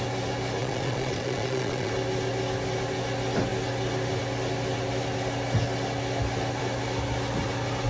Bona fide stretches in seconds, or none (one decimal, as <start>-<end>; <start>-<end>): 0.0-0.6; 1.9-7.9